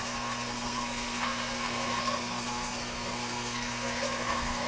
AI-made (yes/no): yes